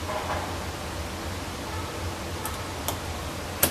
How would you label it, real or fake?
real